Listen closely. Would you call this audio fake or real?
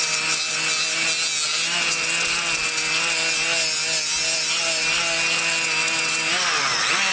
real